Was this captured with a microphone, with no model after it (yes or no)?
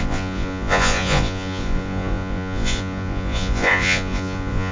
no